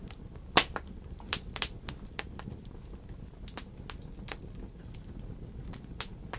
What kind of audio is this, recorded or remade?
recorded